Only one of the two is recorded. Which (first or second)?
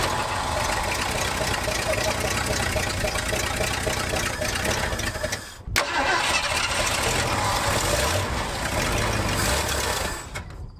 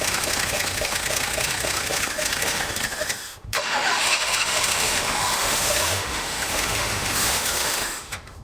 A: first